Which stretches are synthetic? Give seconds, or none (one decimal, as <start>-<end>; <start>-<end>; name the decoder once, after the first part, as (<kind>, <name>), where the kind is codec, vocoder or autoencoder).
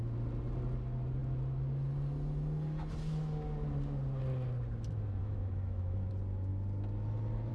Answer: 5.2-6.1 (autoencoder, DAC-VAE)